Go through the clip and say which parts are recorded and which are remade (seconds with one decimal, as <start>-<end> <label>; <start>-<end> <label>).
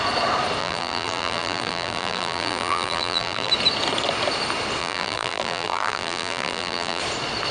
0.0-0.6 recorded; 0.6-3.5 remade; 3.5-4.8 recorded; 4.8-7.0 remade; 7.0-7.5 recorded